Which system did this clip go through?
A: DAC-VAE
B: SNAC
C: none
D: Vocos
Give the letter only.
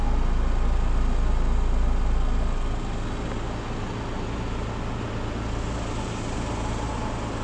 C